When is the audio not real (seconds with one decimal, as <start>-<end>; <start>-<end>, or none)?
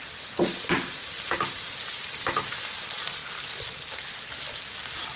none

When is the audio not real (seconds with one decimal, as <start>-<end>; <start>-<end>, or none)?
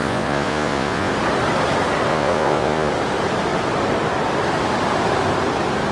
0.0-1.1; 2.1-2.9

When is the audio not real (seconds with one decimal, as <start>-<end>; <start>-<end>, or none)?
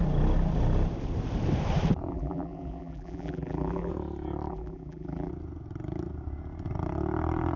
2.1-3.9; 4.5-5.3